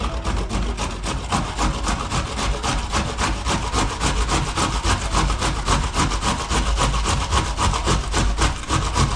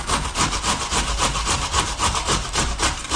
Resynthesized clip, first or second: second